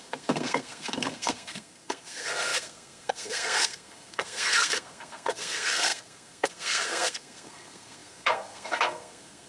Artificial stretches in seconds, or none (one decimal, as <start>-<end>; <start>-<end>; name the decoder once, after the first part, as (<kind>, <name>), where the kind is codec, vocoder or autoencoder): 0.0-9.5 (codec, SNAC)